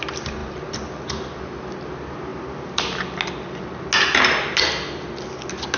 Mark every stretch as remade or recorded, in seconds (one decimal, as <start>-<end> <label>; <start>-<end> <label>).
0.0-5.8 recorded

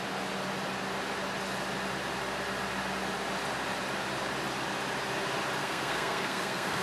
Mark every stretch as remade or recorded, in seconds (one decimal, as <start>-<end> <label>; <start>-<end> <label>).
0.0-5.6 recorded; 5.6-6.8 remade

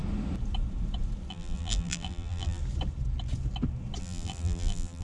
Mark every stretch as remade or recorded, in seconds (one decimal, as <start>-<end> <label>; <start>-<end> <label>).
0.0-1.3 recorded; 1.3-2.6 remade; 2.6-4.0 recorded; 4.0-5.0 remade